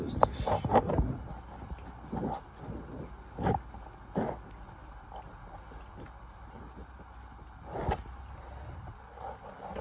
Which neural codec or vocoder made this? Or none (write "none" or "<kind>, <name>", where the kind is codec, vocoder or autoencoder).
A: none